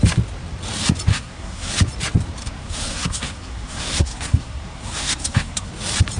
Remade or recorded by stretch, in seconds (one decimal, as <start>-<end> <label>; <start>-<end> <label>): 0.0-1.1 recorded; 1.1-1.7 remade; 1.7-2.4 recorded; 2.4-5.7 remade; 5.7-6.2 recorded